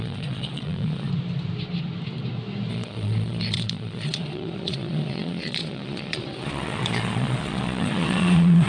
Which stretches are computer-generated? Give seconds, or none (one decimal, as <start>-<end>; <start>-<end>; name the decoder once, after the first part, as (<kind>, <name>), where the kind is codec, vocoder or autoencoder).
0.0-1.1 (vocoder, Vocos); 2.7-8.7